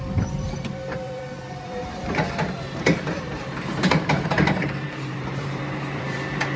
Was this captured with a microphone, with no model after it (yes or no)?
no